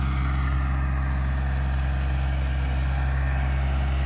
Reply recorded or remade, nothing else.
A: recorded